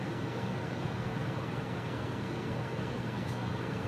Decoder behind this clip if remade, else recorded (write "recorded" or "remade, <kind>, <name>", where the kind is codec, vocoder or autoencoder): remade, codec, SNAC